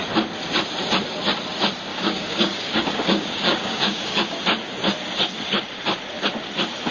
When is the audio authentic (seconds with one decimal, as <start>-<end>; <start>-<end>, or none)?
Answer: 0.0-1.9; 4.4-6.9